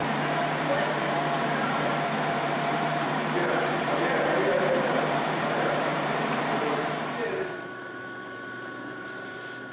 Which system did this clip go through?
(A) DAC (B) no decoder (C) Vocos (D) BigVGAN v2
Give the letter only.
D